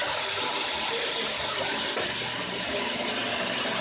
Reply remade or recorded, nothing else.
recorded